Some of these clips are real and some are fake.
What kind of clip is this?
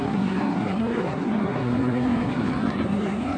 fake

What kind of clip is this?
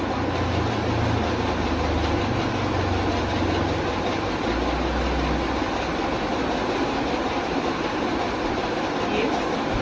real